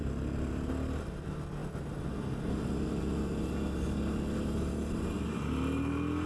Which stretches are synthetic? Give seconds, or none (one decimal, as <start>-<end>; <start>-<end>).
none